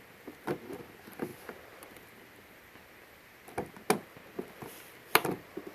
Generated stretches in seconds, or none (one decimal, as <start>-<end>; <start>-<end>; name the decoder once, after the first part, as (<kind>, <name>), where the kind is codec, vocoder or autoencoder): none